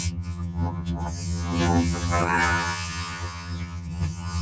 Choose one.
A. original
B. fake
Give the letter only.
B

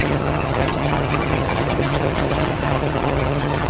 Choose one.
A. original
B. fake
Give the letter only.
B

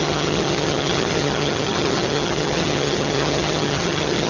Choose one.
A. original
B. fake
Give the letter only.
B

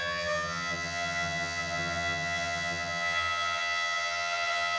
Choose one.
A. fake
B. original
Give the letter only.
A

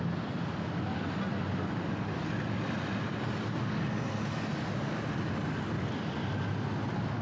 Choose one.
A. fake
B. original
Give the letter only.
B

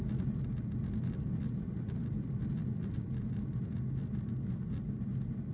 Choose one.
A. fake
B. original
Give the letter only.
B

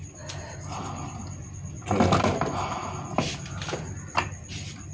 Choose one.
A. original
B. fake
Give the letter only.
A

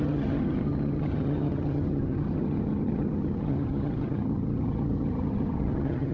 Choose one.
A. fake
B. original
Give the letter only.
A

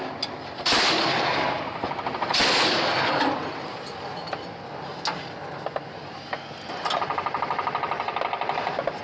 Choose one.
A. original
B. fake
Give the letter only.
A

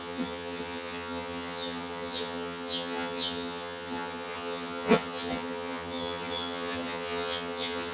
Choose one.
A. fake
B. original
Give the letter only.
A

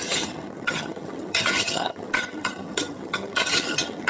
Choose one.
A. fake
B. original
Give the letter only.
A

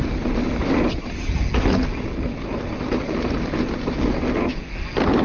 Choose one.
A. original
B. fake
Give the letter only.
A